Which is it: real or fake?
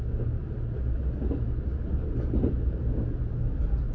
real